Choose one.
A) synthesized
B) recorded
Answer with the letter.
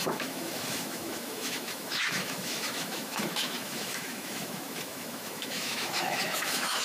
A